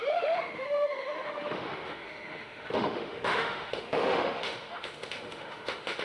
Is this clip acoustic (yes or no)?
no